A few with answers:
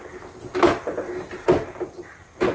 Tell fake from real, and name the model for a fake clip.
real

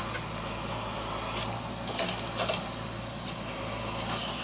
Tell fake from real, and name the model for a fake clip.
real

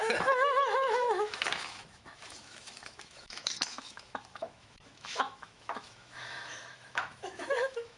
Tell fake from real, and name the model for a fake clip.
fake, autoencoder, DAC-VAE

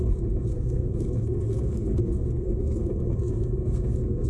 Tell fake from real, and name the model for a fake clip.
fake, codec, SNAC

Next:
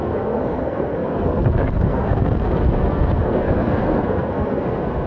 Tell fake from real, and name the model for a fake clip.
fake, codec, SNAC